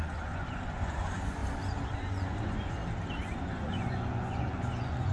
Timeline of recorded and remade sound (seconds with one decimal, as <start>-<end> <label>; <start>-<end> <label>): 0.0-1.4 remade; 1.4-2.0 recorded; 2.0-2.8 remade; 2.8-3.4 recorded; 3.4-5.1 remade